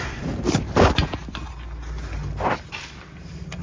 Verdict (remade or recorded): recorded